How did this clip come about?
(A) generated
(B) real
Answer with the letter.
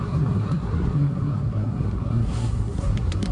A